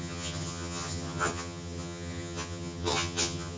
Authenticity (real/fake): fake